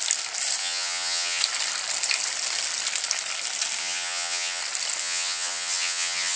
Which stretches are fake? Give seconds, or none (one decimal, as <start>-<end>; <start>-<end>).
0.6-1.4; 3.8-4.6; 5.0-6.4